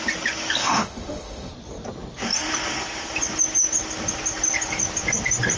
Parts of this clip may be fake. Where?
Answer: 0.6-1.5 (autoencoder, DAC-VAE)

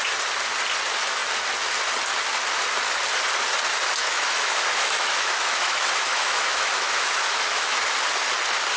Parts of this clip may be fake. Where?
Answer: 4.0-7.8 (autoencoder, DAC-VAE)

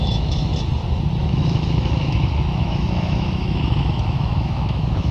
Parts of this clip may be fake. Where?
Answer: 0.0-0.5 (autoencoder, DAC-VAE); 1.2-5.1

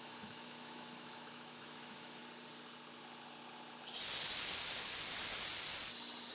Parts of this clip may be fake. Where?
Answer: 0.0-2.2 (autoencoder, DAC-VAE)